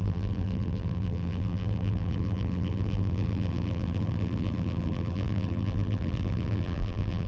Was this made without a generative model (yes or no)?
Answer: no